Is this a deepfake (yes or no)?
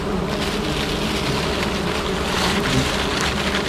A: no